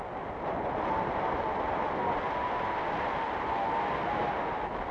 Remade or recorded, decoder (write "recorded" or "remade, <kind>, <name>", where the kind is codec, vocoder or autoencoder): recorded